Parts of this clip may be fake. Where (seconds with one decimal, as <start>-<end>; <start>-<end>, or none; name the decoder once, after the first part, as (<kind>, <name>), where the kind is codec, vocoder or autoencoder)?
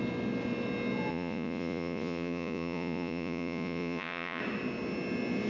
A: 1.1-4.4 (vocoder, Vocos)